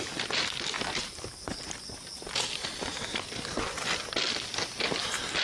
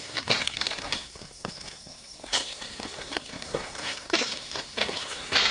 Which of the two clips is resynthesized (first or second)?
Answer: second